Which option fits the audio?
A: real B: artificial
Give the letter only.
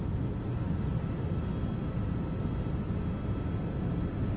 A